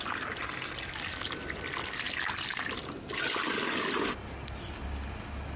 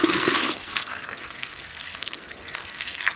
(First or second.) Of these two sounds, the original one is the first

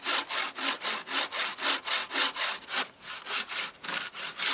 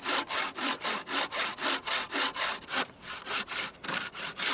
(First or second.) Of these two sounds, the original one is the first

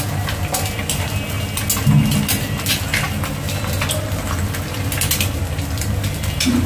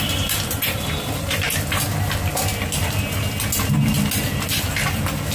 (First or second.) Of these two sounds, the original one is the first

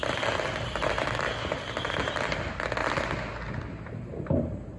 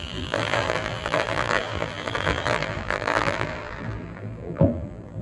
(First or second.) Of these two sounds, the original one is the first